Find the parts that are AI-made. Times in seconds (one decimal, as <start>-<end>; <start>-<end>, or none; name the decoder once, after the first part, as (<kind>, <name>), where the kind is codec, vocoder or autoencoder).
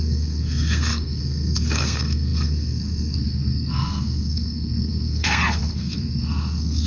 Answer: 0.0-6.9 (codec, SNAC)